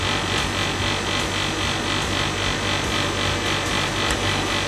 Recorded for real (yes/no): yes